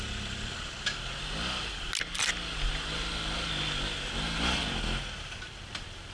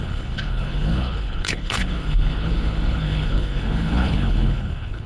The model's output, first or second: second